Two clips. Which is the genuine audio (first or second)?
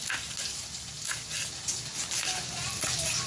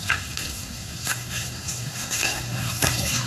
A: first